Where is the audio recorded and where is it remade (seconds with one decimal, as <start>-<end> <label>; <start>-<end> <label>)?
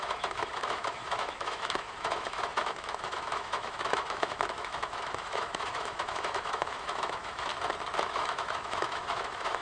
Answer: 0.0-7.5 remade; 7.5-8.0 recorded; 8.0-9.6 remade